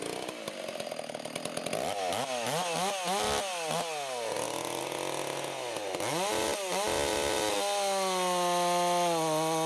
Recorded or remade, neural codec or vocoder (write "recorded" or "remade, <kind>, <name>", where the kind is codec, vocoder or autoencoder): recorded